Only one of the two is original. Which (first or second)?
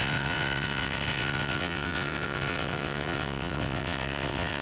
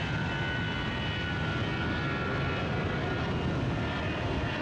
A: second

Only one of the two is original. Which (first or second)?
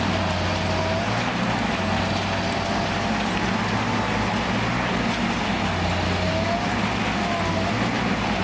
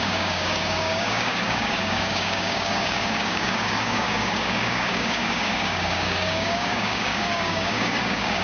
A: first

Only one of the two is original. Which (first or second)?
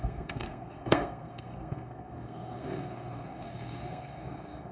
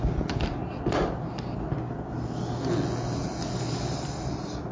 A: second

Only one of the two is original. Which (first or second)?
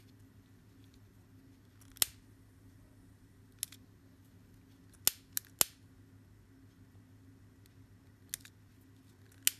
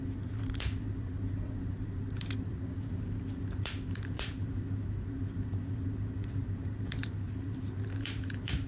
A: first